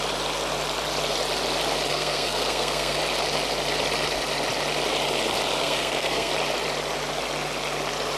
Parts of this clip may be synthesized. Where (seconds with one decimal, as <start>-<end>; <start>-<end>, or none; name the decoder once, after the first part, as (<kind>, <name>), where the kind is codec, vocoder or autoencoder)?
1.9-3.0 (codec, SNAC); 5.6-6.3